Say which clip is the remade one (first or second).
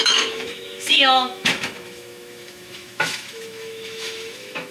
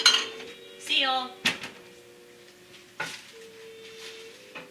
first